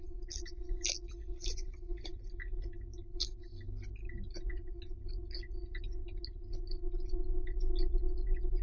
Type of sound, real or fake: real